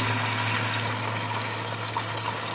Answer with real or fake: real